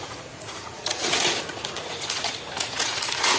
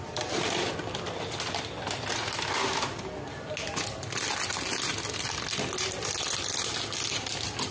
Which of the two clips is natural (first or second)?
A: second